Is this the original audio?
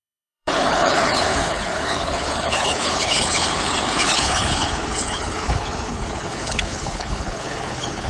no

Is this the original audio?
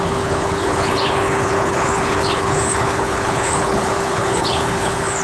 no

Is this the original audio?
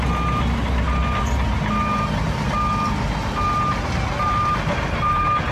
yes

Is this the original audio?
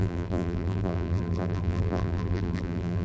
no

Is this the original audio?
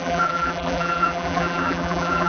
no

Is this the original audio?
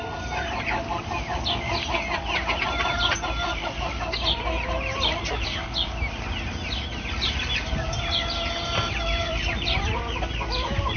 yes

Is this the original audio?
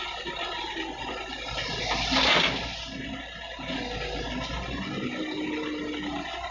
yes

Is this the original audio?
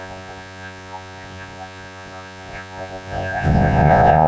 no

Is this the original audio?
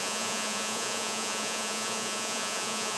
no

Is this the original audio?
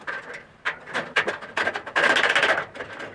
yes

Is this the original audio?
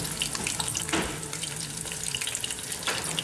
yes